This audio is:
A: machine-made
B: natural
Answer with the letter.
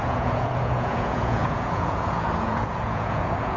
A